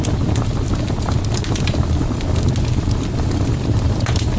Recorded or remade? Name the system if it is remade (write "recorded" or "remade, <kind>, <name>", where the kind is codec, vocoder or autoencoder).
recorded